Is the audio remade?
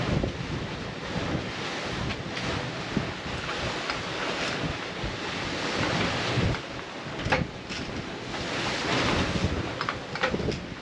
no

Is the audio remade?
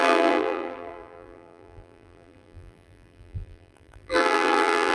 yes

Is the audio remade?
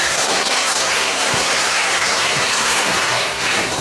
yes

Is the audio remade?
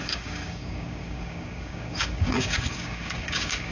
yes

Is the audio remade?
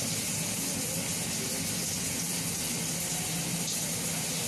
no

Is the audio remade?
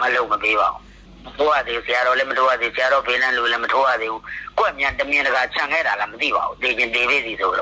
no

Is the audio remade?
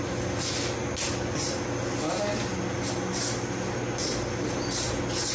no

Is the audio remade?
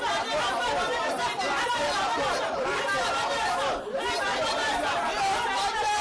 no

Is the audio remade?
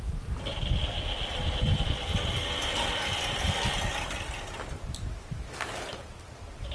no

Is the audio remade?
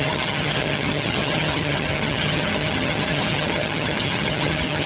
yes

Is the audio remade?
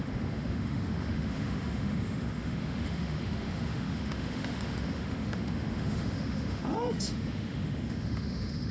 yes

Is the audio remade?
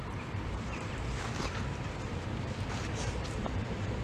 yes